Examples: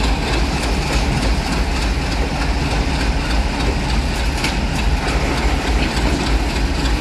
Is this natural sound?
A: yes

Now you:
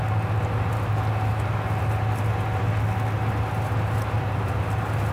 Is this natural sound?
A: yes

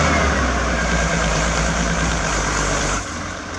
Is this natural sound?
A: no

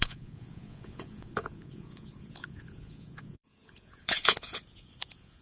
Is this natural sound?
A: no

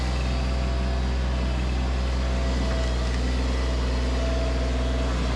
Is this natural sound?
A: yes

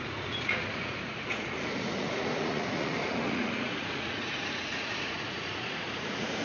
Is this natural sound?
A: no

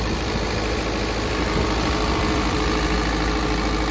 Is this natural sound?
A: yes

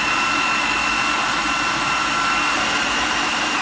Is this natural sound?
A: yes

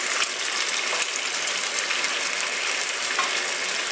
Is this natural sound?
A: no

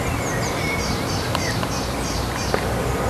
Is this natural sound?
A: no